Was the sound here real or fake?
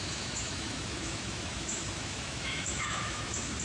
fake